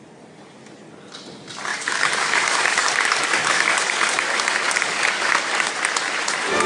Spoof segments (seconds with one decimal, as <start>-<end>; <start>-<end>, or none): 1.7-5.7